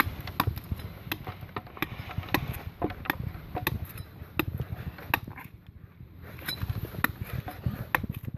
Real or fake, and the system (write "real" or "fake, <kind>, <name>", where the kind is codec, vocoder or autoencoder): real